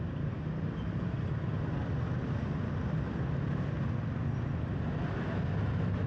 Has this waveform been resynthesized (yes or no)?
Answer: no